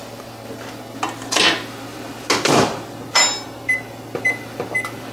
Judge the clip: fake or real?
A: real